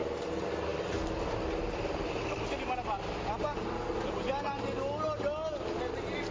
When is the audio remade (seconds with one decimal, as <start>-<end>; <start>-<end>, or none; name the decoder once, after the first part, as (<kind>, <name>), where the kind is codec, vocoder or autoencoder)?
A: none